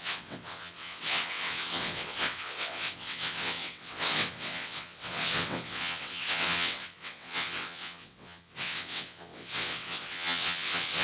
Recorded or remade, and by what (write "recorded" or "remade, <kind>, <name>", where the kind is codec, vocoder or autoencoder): remade, vocoder, WaveNeXt